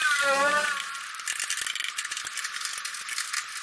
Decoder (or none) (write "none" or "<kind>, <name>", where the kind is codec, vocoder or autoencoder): none